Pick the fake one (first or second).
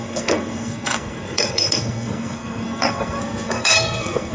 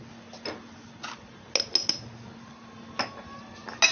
first